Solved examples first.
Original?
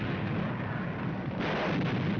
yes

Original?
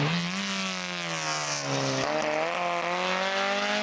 yes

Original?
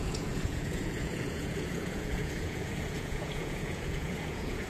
no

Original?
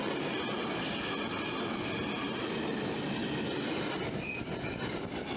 yes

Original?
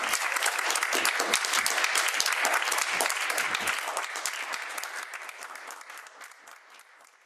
yes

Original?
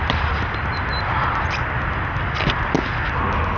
yes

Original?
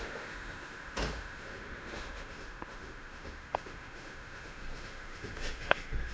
no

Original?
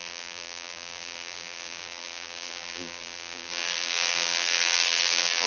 no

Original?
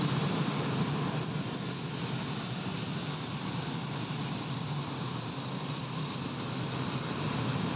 yes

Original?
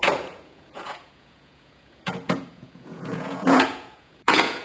no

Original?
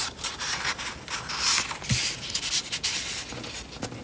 yes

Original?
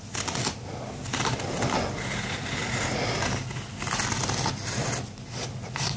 yes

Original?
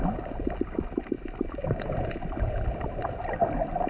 yes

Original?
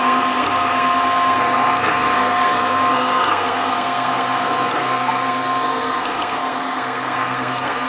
no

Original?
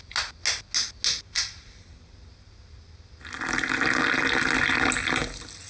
yes